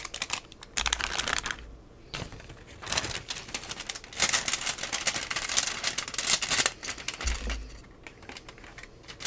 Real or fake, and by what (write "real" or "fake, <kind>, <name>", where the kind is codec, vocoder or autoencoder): real